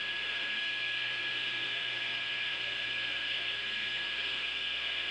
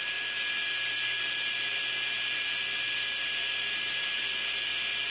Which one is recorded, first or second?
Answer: second